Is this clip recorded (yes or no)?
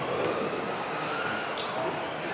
yes